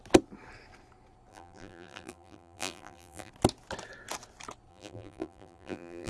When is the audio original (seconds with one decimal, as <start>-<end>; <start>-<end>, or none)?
0.0-1.3; 3.3-4.7